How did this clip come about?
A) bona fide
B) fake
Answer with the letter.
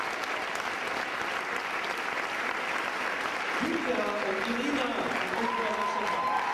A